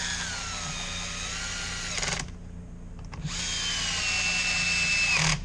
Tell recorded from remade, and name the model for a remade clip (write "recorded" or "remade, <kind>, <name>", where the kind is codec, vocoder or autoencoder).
recorded